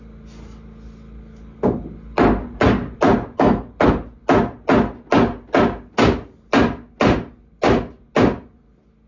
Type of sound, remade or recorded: recorded